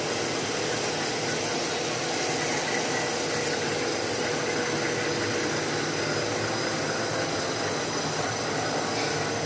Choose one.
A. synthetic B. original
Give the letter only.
B